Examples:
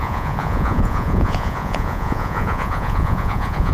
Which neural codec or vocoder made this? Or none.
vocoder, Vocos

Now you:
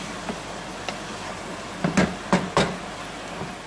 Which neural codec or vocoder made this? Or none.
none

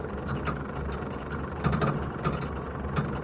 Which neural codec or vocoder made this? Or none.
none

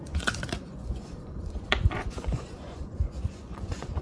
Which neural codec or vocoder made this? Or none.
vocoder, Vocos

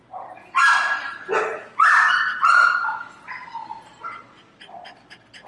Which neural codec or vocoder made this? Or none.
none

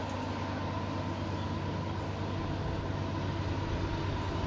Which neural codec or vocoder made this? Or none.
none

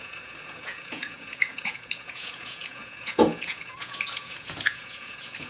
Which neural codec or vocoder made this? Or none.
vocoder, Vocos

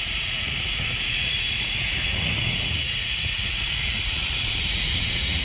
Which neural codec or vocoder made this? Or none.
vocoder, Vocos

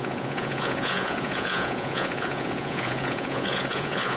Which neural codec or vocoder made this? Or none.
vocoder, Vocos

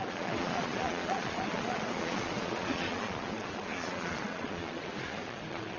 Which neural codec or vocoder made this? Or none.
vocoder, Vocos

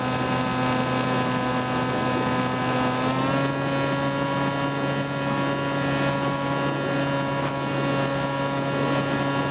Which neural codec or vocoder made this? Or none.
none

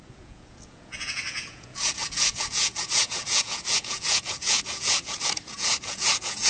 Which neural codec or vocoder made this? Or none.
vocoder, Vocos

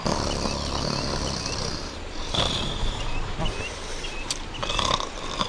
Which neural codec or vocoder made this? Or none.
none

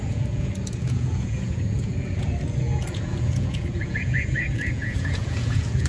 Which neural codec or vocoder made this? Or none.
vocoder, Vocos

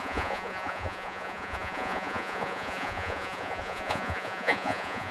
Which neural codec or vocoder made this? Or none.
vocoder, Vocos